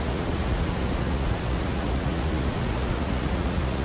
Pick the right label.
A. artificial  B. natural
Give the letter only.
A